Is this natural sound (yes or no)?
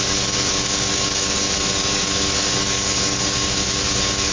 no